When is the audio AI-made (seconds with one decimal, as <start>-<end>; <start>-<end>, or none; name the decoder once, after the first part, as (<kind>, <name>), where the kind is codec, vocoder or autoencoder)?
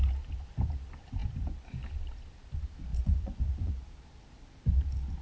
2.9-3.7 (vocoder, Vocos)